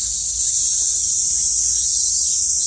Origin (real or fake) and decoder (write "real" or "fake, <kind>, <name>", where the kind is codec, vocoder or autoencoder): real